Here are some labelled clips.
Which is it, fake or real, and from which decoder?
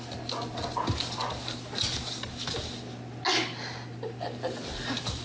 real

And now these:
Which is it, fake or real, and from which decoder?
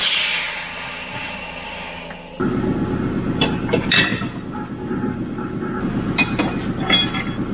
real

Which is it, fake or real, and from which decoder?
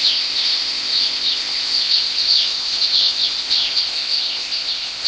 fake, codec, ZipCodec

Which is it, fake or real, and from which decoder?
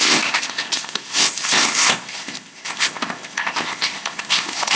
fake, codec, ZipCodec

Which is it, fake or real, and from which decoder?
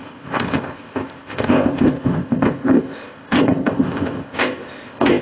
fake, codec, ZipCodec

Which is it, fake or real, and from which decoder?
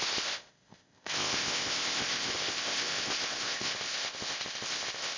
fake, codec, ZipCodec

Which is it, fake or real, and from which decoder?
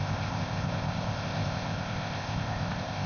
fake, codec, ZipCodec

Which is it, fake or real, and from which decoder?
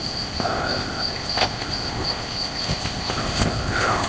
fake, codec, ZipCodec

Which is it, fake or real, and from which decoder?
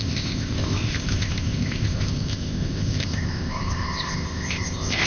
fake, codec, ZipCodec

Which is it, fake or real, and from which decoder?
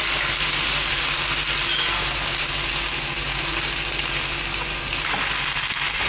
real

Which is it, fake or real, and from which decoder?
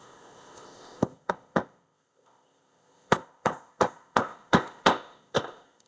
fake, codec, ZipCodec